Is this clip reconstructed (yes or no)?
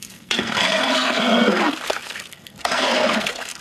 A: yes